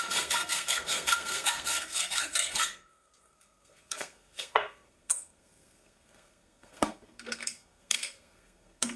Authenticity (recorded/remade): remade